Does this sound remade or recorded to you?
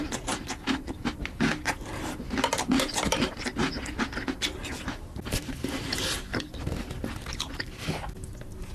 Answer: recorded